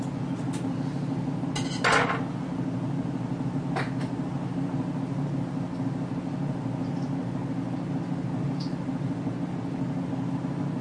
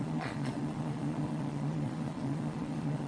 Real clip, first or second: first